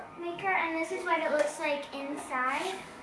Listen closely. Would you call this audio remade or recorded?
remade